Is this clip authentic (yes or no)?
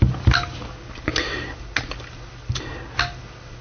yes